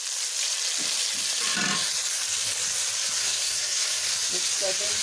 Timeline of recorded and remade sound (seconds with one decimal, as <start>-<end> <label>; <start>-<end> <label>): 0.0-3.2 recorded; 3.2-4.1 remade; 4.1-5.0 recorded